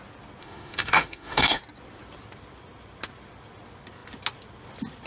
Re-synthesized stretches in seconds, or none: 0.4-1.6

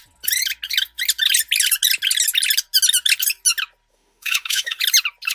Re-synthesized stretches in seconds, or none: 3.9-4.8

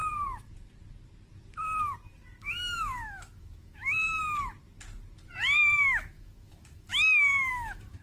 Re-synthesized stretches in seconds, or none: 2.4-4.2; 5.6-8.0

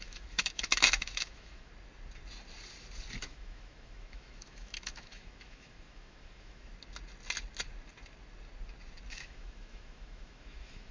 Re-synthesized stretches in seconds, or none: 0.0-1.7; 3.2-6.7; 9.1-10.9

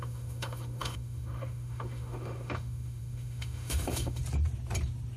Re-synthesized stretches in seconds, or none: 0.0-4.2

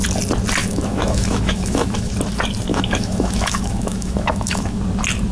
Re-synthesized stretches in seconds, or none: 0.6-2.1; 2.7-4.8

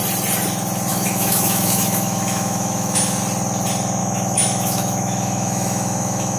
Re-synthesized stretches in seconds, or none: 0.9-3.2; 4.0-6.4

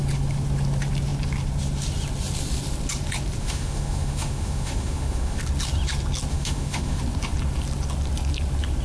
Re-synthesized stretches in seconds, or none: 3.4-5.4; 6.3-7.0